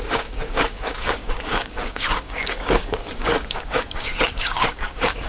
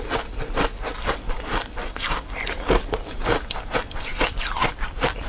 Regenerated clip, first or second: first